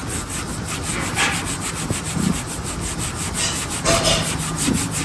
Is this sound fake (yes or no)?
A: no